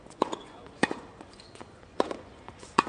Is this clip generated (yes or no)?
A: yes